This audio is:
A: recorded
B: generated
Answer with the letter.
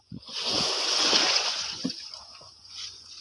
B